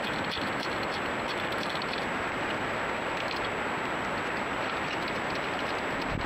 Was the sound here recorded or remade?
recorded